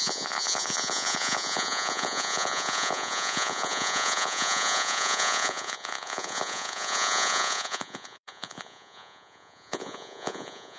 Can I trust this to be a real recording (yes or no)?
no